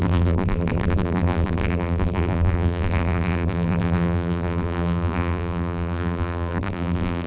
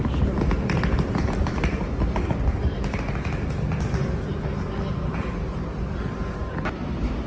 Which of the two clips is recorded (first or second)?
second